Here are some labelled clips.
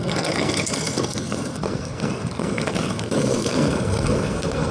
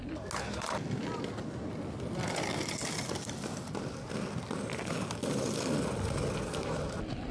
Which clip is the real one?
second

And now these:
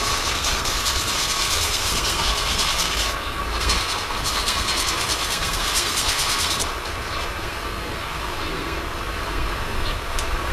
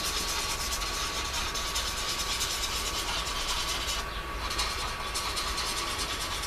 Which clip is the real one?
second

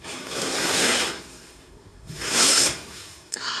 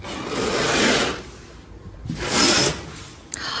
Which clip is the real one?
second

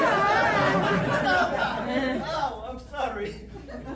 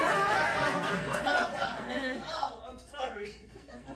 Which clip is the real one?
first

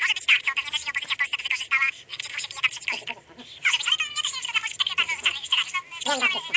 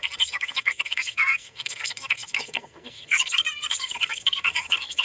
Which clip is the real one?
first